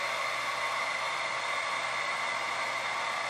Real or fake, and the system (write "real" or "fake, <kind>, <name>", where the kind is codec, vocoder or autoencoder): real